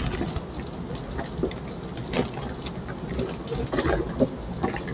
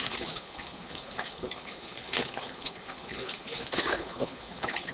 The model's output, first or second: second